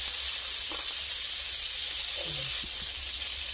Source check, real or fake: real